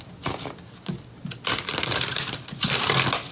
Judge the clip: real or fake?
real